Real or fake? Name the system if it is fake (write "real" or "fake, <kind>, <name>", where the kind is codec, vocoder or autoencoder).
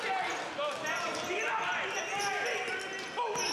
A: real